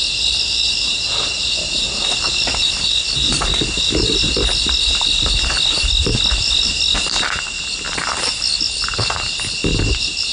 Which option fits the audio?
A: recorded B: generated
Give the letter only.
A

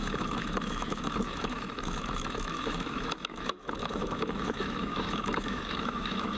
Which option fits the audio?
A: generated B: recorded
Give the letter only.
A